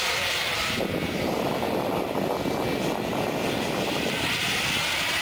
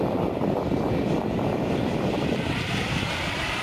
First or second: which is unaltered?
first